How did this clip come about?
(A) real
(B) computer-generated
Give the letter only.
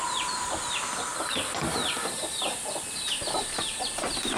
A